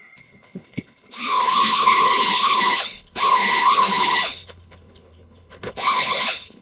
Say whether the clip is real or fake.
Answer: fake